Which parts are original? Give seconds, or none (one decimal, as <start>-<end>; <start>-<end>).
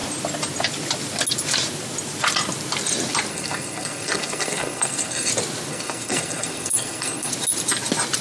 0.0-3.3; 5.3-5.7; 7.3-8.2